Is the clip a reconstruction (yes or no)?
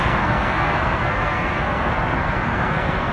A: yes